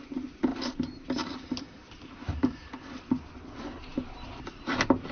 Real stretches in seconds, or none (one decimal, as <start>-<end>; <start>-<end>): 0.0-0.5; 2.7-5.1